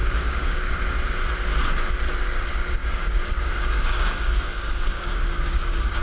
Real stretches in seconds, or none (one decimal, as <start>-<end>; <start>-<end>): 0.7-2.8